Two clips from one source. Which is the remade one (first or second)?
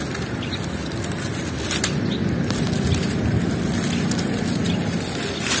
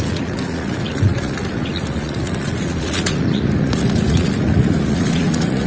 second